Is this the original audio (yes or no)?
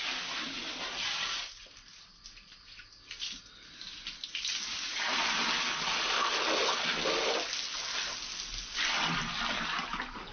yes